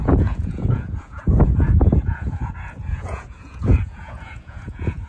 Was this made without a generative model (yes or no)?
no